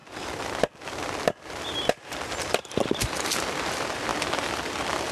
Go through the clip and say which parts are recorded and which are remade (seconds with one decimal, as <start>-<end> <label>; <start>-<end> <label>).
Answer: 0.0-5.1 recorded

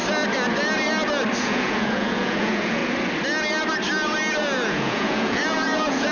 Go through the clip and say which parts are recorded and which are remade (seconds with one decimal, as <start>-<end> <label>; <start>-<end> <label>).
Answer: 0.0-1.4 recorded; 1.4-2.8 remade; 2.8-4.4 recorded; 4.4-6.1 remade

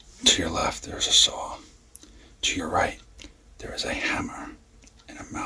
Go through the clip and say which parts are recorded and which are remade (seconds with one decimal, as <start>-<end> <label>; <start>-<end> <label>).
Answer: 0.0-5.5 remade